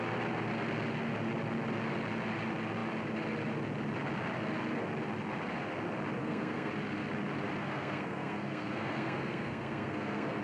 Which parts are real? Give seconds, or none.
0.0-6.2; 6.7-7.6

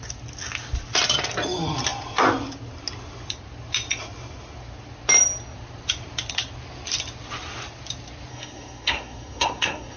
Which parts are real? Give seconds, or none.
0.0-8.3